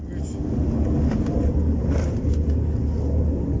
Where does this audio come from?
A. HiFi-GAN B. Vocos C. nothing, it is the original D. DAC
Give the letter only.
C